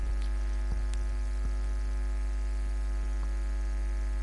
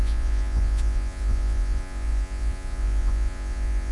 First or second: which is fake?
second